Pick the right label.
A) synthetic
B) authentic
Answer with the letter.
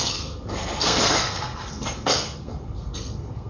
A